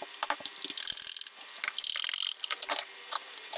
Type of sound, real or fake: real